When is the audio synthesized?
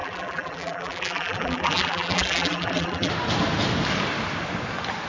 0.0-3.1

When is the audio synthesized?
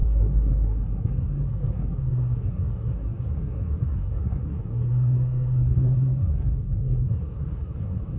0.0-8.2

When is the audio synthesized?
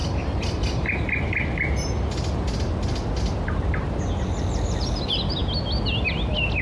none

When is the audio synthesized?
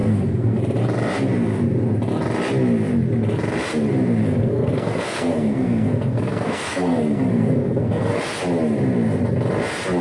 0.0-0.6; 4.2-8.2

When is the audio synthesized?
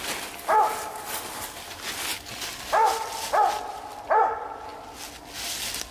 none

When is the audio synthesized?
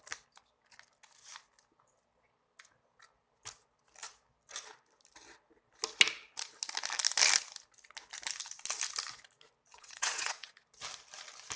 9.7-10.5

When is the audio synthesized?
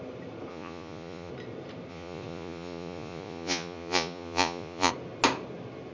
0.5-1.3; 1.9-4.9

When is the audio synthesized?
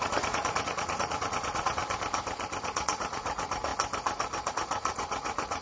0.0-1.8; 2.6-3.7; 4.5-5.6